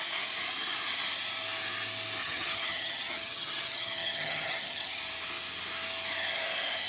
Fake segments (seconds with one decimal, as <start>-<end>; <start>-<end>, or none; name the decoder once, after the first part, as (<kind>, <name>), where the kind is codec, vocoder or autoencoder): 2.2-5.0 (vocoder, HiFi-GAN)